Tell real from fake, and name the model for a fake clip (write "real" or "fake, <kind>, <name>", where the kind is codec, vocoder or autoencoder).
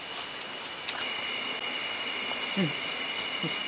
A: real